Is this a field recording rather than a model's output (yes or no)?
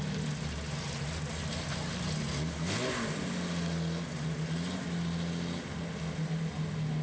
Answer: yes